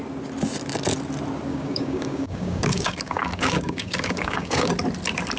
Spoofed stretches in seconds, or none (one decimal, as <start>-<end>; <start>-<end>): 1.5-4.7